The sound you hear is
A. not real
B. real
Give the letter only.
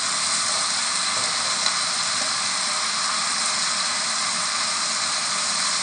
B